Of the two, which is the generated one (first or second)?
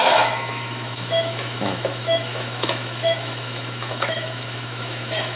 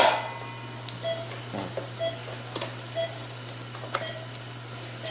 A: first